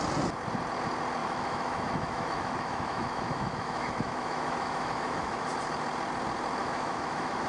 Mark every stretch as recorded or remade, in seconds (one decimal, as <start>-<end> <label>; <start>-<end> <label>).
0.0-1.2 recorded; 1.2-5.5 remade; 5.5-6.6 recorded; 6.6-7.5 remade